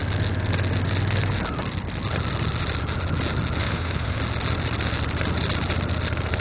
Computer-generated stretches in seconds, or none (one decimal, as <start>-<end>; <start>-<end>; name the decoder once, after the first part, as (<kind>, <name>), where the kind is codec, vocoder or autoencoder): 3.6-4.2 (autoencoder, DAC-VAE)